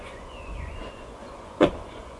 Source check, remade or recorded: remade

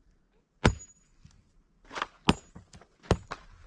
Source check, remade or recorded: recorded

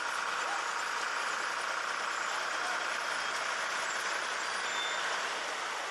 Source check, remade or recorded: recorded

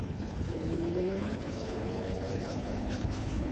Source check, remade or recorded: remade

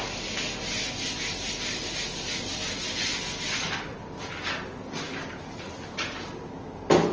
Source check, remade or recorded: recorded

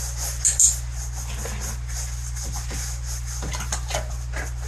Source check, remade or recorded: recorded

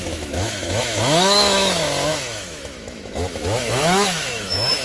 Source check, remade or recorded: remade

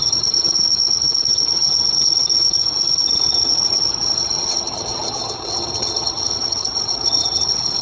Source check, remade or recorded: remade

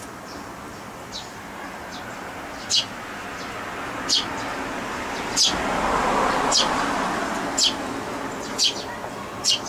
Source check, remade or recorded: recorded